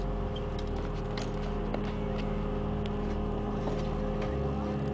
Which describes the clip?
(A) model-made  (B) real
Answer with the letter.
B